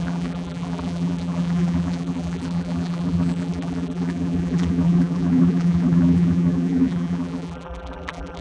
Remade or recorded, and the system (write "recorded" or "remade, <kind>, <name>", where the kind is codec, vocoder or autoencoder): remade, vocoder, BigVGAN v2